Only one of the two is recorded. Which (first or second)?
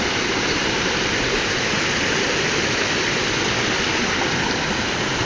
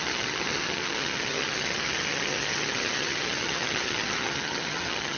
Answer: first